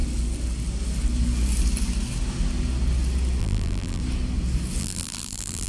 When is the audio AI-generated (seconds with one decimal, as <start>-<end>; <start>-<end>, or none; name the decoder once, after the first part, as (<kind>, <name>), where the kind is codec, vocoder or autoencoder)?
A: 3.4-4.0 (vocoder, BigVGAN v2); 4.8-5.7